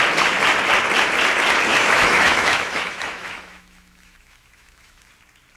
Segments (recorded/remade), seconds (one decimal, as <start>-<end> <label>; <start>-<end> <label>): 0.0-1.7 recorded; 1.7-5.1 remade; 5.1-5.6 recorded